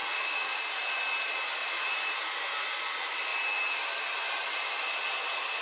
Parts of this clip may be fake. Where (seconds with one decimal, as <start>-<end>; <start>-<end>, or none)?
0.0-0.6; 1.6-2.1